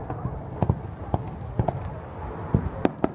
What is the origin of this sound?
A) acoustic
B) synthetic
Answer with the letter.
A